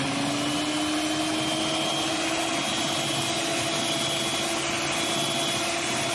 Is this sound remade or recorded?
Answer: recorded